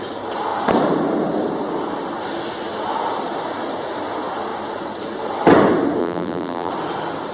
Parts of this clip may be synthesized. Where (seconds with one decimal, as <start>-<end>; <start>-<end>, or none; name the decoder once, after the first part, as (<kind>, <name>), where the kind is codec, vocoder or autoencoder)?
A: 6.0-6.7 (vocoder, BigVGAN v2)